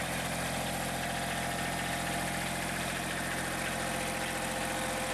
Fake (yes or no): no